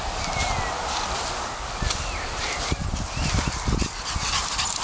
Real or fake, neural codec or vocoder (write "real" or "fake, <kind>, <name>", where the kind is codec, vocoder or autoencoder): real